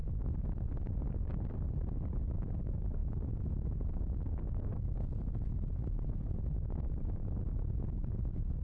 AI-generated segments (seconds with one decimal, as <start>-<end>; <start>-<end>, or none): none